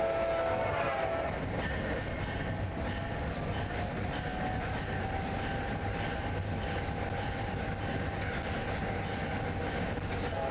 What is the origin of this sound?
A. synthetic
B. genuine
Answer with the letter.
B